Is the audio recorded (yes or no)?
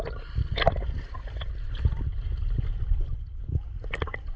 yes